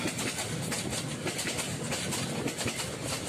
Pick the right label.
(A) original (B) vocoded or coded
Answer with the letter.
A